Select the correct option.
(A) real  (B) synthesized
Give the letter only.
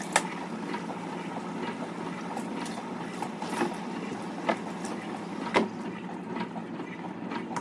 A